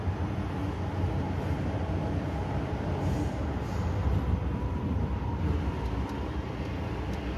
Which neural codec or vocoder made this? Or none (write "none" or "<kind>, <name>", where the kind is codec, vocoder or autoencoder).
none